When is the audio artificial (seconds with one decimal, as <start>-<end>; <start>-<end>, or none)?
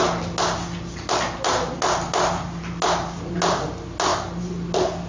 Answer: none